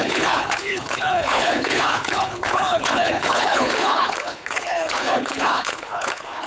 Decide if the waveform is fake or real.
fake